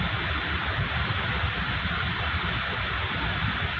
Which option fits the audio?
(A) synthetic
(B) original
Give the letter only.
B